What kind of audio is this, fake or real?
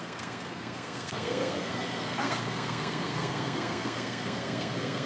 fake